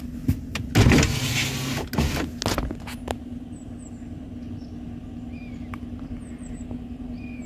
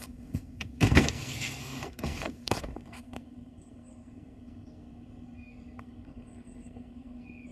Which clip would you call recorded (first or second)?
first